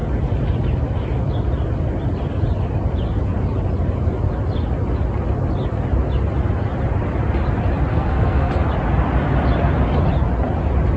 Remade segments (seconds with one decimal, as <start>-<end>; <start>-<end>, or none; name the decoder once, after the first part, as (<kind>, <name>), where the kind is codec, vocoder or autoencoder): 7.9-8.5 (codec, SNAC)